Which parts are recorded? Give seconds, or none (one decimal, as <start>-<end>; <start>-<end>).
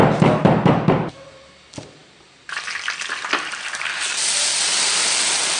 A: 0.0-5.6